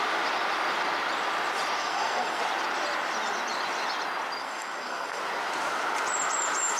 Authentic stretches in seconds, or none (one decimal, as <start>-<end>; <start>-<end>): 0.0-1.8; 2.4-4.4; 5.2-6.8

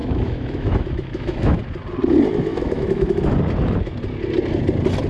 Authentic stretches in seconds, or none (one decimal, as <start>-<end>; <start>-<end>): 1.6-2.5; 3.2-5.1